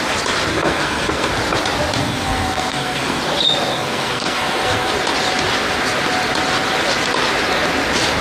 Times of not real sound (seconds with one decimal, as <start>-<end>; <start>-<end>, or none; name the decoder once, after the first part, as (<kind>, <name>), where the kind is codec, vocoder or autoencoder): 0.5-1.3 (codec, SNAC); 2.0-3.2; 3.7-4.9